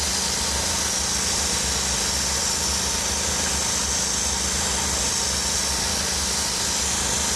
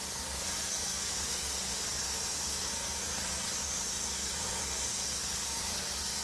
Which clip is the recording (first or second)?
first